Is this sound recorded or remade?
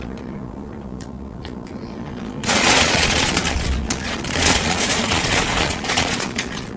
remade